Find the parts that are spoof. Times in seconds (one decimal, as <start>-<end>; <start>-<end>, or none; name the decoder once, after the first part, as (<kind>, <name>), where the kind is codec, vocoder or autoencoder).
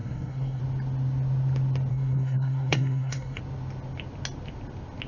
0.0-0.6 (codec, SNAC); 1.9-3.4